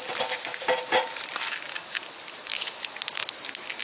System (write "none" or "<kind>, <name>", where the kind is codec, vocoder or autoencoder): none